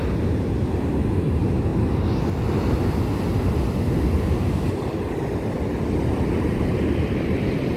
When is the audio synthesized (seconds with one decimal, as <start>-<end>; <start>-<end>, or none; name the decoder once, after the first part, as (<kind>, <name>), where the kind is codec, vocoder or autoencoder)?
0.0-1.7 (vocoder, BigVGAN v2); 6.4-7.8